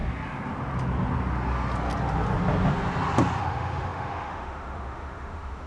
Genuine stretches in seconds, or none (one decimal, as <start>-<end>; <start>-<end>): 0.0-3.4